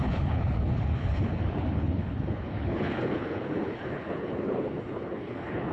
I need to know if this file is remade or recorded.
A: remade